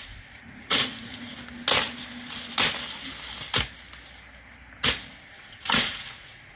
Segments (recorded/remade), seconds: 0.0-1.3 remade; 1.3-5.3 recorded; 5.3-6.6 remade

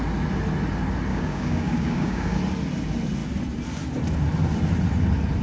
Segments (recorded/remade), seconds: 0.0-1.1 recorded; 1.1-2.4 remade; 2.4-5.4 recorded

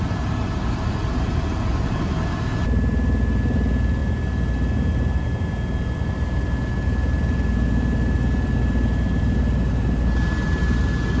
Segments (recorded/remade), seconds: 0.0-11.2 recorded